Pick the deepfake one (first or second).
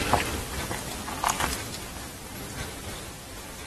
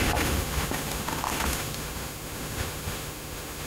second